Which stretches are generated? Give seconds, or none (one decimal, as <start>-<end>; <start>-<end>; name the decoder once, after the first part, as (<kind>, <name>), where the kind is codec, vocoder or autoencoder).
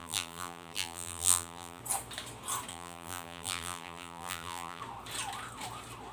0.0-1.8 (vocoder, BigVGAN v2); 2.7-4.8